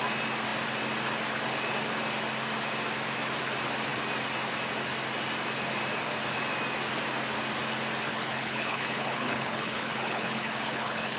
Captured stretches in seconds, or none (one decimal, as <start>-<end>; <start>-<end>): 0.0-8.1